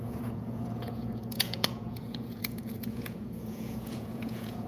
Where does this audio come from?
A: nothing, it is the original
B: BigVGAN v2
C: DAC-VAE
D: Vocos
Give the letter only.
D